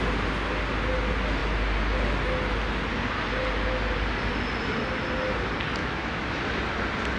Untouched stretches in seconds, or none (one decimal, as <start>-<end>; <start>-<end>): 0.0-5.8; 6.4-7.2